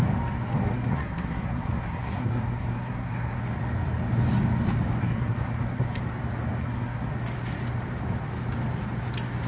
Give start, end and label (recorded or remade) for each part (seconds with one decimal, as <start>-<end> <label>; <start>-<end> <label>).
0.0-0.6 recorded; 0.6-3.4 remade; 3.4-5.0 recorded; 5.0-6.0 remade; 6.0-6.6 recorded; 6.6-7.1 remade; 7.1-9.5 recorded